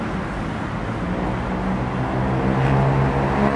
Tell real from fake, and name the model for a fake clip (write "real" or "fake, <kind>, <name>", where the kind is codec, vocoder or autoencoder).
real